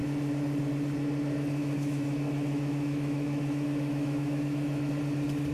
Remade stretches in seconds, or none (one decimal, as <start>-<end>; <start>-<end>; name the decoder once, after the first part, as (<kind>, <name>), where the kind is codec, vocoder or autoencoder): 1.6-4.9 (autoencoder, DAC-VAE)